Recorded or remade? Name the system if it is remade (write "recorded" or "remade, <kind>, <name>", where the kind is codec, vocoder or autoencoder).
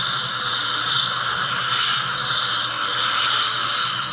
recorded